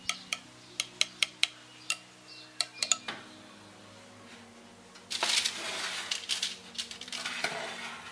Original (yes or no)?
yes